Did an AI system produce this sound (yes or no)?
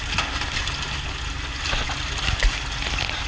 no